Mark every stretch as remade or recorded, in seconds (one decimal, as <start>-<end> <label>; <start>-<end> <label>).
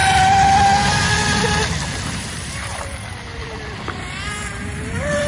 0.0-2.0 recorded; 2.0-3.3 remade; 3.3-4.0 recorded; 4.0-5.3 remade